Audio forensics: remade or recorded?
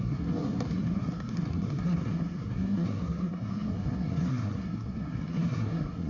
remade